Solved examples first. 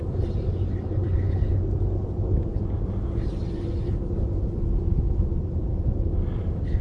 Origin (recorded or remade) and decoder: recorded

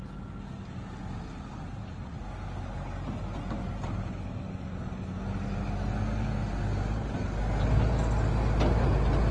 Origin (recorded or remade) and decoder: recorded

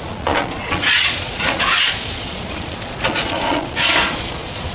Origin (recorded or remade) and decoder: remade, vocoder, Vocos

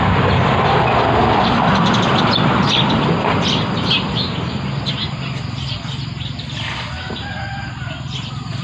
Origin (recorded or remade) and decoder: recorded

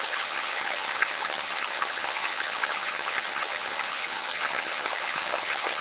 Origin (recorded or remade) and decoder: remade, vocoder, HiFi-GAN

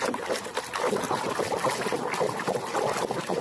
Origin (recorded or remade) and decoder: recorded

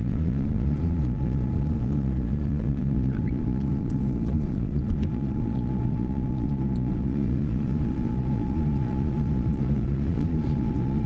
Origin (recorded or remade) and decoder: remade, vocoder, Vocos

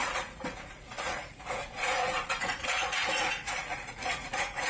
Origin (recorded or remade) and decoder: remade, vocoder, Vocos